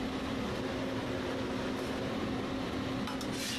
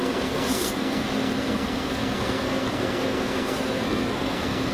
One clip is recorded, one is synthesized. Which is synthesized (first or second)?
second